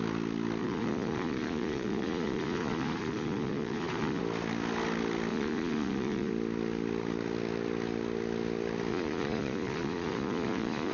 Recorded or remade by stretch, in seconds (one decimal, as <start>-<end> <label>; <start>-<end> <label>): 0.0-0.6 recorded; 0.6-4.2 remade; 4.2-5.3 recorded; 5.3-6.3 remade; 6.3-8.9 recorded; 8.9-10.9 remade